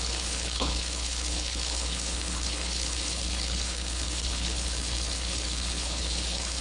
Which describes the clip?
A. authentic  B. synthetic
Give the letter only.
B